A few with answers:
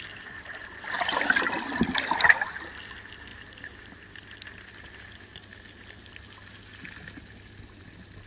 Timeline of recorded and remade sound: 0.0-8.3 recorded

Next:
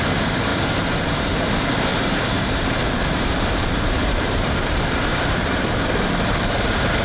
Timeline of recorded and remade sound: 0.0-0.5 recorded; 0.5-1.5 remade; 1.5-1.9 recorded; 1.9-5.6 remade; 5.6-7.0 recorded

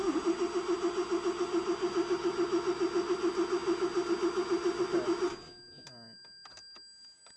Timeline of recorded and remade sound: 0.0-7.4 recorded

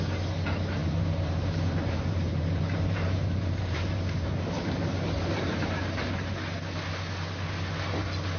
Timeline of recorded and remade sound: 0.0-0.8 recorded; 0.8-5.8 remade; 5.8-8.4 recorded

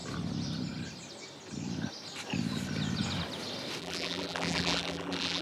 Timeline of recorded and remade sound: 0.0-3.8 recorded; 3.8-5.4 remade